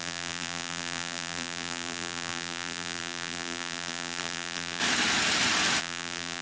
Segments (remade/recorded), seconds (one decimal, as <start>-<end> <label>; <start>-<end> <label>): 0.0-4.8 remade; 4.8-5.8 recorded; 5.8-6.4 remade